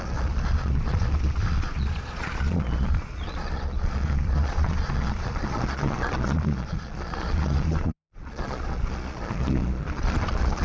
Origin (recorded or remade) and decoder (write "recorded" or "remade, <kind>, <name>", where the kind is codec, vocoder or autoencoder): remade, vocoder, Vocos